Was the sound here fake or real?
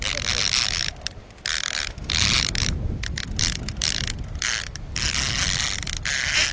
real